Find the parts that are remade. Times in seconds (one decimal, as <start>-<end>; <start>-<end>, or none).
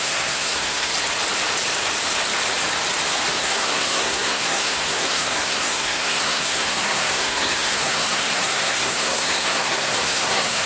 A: 0.0-0.9; 3.4-10.7